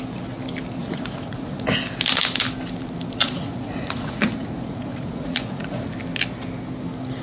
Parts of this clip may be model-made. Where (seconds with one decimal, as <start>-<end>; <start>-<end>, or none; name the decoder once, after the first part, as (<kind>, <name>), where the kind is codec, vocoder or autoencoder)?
0.8-1.7 (vocoder, Vocos); 3.2-5.9